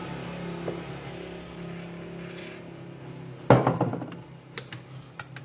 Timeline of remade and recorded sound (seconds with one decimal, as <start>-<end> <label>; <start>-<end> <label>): 0.0-5.4 recorded